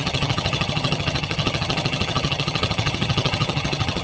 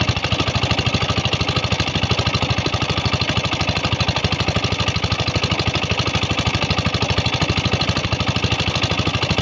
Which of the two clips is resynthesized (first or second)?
first